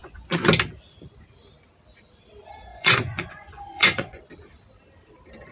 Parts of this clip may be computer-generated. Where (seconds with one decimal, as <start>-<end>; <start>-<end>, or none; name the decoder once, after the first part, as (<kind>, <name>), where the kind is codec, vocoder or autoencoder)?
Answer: 0.0-0.5 (vocoder, Vocos); 2.7-4.2

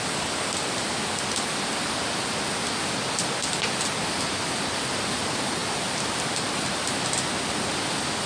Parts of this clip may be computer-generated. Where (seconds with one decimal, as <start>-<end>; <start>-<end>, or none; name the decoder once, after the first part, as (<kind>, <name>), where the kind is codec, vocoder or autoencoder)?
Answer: none